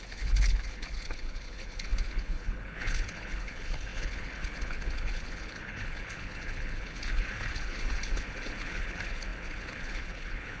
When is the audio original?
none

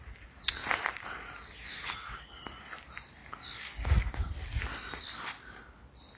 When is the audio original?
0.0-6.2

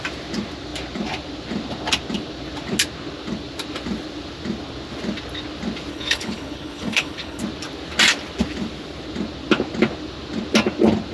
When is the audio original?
0.0-5.9; 7.4-11.1

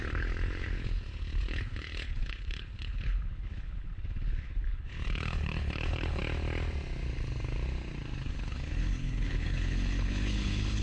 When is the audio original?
6.2-8.2

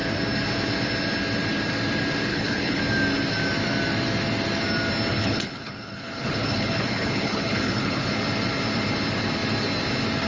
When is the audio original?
0.0-2.3; 2.8-5.1; 8.1-10.3

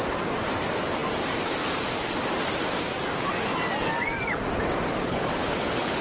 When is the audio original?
0.0-5.0

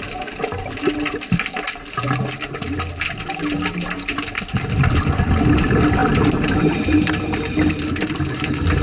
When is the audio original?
0.0-8.8